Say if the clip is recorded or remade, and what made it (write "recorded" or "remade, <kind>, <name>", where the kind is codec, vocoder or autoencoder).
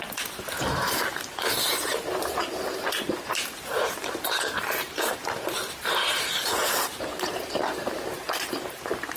remade, vocoder, BigVGAN v2